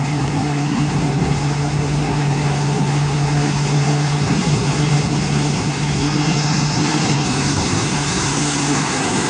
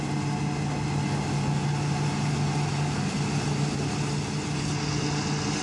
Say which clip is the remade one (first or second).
first